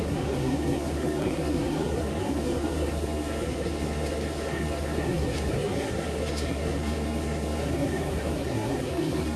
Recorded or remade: remade